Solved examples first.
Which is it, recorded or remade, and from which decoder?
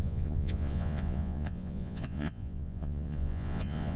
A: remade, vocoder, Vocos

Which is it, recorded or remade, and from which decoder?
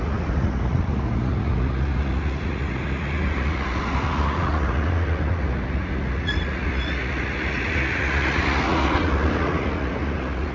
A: remade, vocoder, Vocos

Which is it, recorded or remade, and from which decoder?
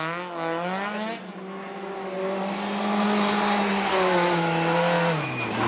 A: recorded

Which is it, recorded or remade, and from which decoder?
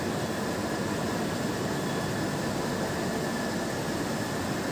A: recorded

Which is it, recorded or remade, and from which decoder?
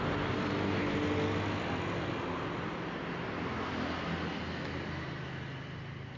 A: recorded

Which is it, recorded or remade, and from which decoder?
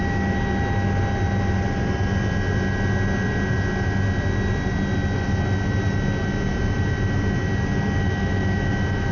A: recorded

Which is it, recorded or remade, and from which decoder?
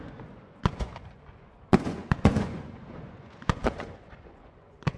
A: remade, vocoder, Vocos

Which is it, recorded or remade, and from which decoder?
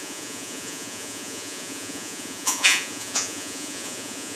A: remade, vocoder, Vocos